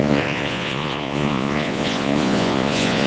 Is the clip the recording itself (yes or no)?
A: no